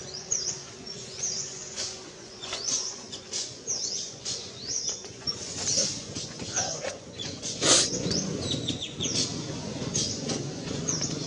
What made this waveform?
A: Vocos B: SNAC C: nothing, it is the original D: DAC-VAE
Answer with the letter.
A